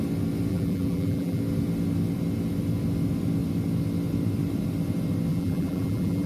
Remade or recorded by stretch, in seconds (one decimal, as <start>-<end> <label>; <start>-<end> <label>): 0.0-0.5 recorded; 0.5-1.4 remade; 1.4-5.3 recorded; 5.3-6.3 remade